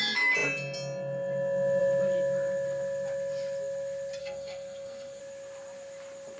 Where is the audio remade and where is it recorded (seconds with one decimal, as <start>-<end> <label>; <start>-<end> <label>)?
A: 0.0-4.2 recorded; 4.2-5.2 remade; 5.2-6.4 recorded